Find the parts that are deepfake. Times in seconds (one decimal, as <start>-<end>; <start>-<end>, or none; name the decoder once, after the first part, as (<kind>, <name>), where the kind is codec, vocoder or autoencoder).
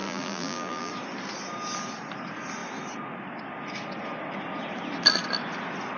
0.0-0.9 (vocoder, BigVGAN v2)